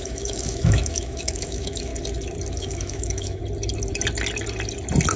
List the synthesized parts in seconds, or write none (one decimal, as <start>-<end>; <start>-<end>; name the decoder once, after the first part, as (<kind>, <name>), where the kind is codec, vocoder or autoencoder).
0.0-1.9 (autoencoder, DAC-VAE); 2.6-3.4